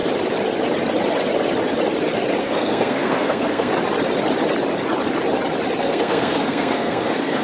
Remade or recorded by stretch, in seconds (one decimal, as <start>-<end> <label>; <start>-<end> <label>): 0.0-2.4 recorded; 2.4-3.7 remade; 3.7-5.8 recorded; 5.8-7.4 remade